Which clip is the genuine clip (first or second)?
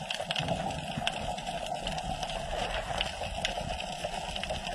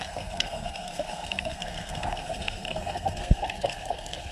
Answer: first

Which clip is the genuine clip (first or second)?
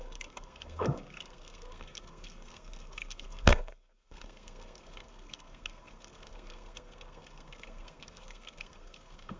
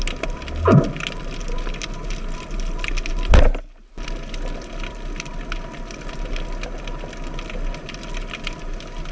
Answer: second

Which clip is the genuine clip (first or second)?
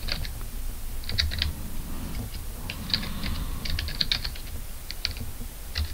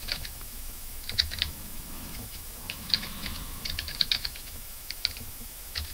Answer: first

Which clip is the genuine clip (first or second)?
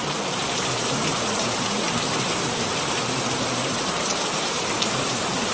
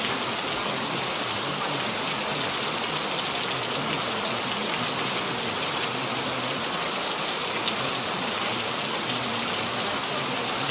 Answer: second